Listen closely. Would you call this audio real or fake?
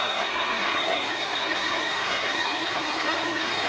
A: fake